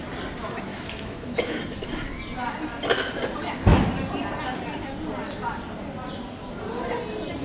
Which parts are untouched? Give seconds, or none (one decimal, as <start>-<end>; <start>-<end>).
0.0-0.7; 1.6-7.4